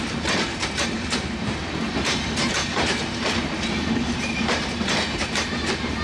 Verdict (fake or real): fake